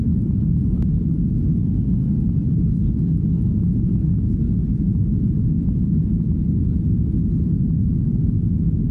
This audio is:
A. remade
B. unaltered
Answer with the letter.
B